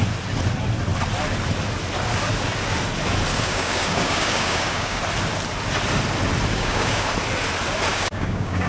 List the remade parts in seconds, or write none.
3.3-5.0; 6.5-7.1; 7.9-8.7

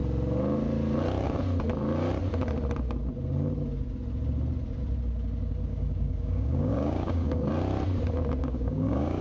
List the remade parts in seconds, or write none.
5.7-7.5; 8.4-9.2

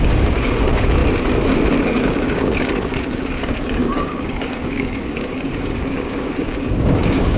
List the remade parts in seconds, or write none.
0.0-1.0; 1.8-7.4

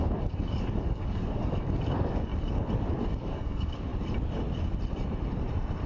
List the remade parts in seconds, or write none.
0.0-2.3; 3.1-3.9

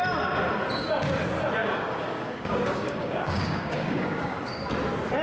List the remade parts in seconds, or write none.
1.6-4.7